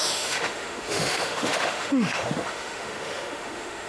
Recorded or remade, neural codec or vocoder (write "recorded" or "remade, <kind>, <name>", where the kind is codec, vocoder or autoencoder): remade, autoencoder, DAC-VAE